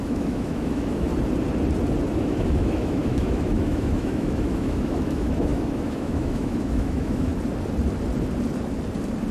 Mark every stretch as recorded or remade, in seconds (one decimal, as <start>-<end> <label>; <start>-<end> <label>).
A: 0.0-1.1 remade; 1.1-2.2 recorded; 2.2-7.3 remade; 7.3-9.3 recorded